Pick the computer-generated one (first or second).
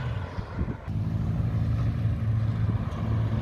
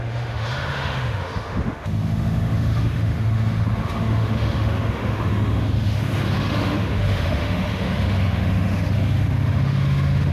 second